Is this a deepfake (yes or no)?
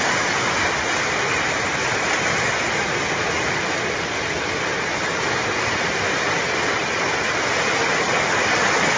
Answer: no